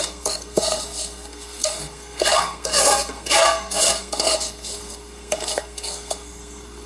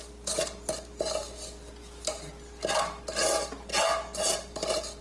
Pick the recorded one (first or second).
second